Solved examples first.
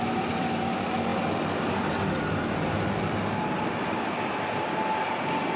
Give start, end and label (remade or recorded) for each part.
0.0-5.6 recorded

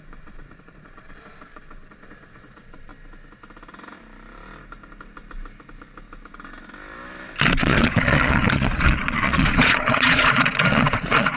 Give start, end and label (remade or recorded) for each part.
0.0-2.9 remade; 2.9-7.6 recorded; 7.6-11.4 remade

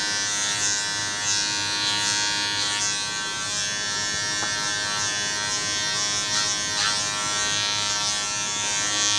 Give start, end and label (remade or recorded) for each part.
0.0-9.2 recorded